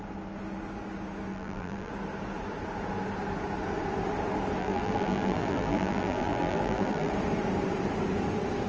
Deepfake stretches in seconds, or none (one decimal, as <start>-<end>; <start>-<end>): 1.3-1.9; 4.6-7.1